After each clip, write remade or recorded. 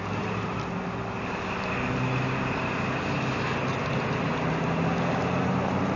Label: recorded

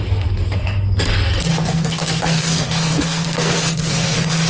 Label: remade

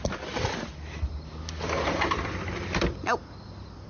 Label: recorded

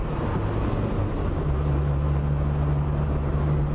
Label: recorded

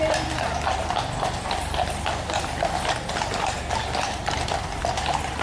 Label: recorded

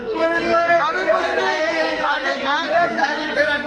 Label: remade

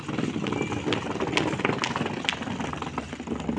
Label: recorded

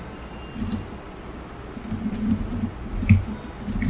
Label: recorded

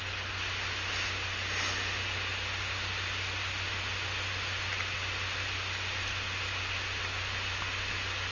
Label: recorded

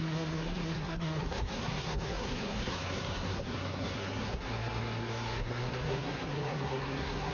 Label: remade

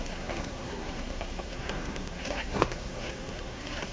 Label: remade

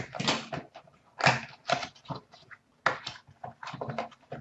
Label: recorded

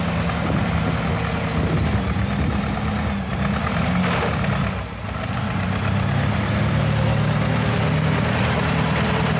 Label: recorded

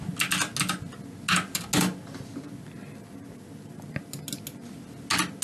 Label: recorded